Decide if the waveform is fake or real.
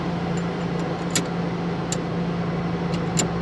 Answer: real